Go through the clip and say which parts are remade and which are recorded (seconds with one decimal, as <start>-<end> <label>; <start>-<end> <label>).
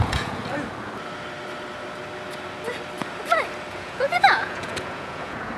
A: 0.0-0.4 remade; 0.4-3.7 recorded; 3.7-5.6 remade